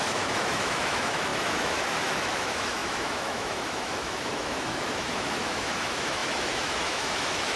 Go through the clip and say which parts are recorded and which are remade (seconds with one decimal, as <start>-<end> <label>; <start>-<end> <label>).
0.0-7.6 remade